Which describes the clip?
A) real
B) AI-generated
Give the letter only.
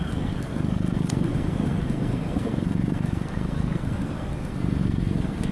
B